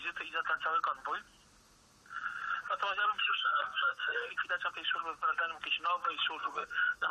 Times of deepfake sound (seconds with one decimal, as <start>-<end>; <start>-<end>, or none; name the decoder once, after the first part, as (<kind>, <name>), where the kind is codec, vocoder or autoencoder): 3.2-4.3 (codec, SNAC); 6.4-7.1

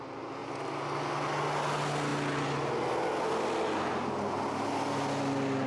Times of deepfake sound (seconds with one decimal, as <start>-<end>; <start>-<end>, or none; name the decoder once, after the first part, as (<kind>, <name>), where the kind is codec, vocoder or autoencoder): none

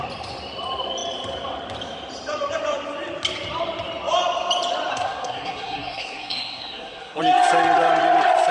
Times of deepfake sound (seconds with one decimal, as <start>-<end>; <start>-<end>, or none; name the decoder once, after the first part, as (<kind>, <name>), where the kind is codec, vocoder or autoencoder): 4.9-7.2 (codec, SNAC)

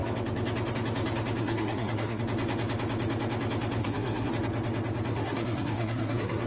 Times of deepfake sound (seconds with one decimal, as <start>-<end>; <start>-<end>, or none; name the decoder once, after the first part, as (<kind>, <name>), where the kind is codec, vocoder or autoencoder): 1.4-2.2 (codec, SNAC); 3.8-4.3; 5.1-6.5

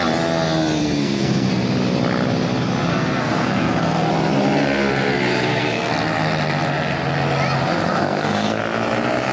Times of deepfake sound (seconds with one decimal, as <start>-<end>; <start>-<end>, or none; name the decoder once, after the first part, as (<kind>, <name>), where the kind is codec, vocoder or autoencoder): 0.8-1.5 (codec, SNAC); 2.9-4.1; 5.3-5.9; 7.9-8.6

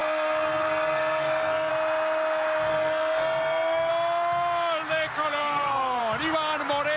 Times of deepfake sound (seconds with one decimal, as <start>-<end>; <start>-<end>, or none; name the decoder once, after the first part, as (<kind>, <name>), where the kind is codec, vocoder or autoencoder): 0.0-1.7 (codec, SNAC); 2.7-3.9; 5.4-6.0